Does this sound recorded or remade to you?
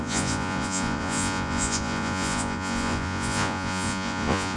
remade